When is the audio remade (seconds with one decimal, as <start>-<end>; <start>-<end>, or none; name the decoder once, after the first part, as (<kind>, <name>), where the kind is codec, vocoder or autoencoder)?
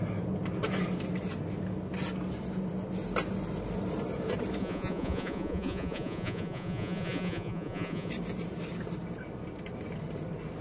4.6-8.1 (vocoder, Vocos)